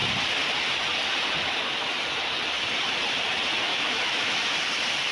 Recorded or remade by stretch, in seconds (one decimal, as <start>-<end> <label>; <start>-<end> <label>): 0.0-3.7 recorded; 3.7-4.5 remade; 4.5-5.1 recorded